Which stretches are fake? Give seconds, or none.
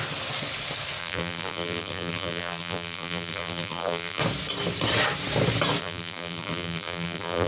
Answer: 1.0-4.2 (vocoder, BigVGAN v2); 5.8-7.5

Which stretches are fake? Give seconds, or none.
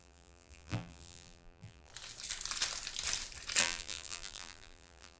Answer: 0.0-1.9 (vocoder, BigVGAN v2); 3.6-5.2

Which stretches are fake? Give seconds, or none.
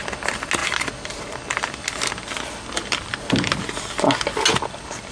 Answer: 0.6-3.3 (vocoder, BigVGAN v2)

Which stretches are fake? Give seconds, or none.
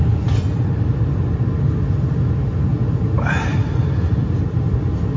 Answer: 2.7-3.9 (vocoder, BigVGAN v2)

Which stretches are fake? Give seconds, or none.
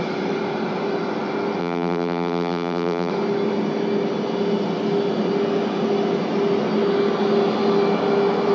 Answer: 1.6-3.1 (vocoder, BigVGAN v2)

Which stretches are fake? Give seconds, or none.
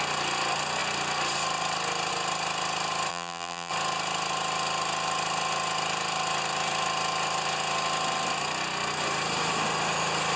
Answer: 3.1-3.7 (vocoder, BigVGAN v2)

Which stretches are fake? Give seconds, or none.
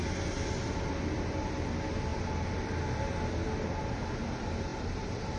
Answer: 2.1-3.0 (vocoder, BigVGAN v2); 4.7-5.4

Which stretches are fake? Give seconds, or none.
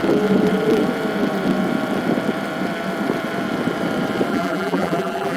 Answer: 4.3-5.4 (vocoder, BigVGAN v2)